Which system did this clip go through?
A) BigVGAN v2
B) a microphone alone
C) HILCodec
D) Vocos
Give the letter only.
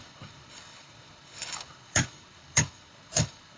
C